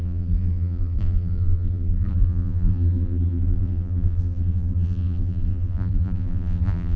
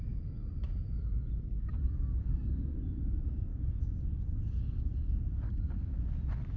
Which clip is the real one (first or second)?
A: second